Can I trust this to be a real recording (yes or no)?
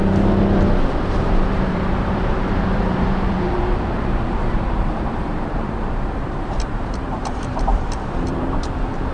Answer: no